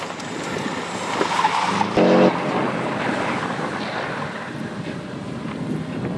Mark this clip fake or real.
fake